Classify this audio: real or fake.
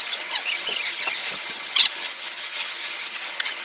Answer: fake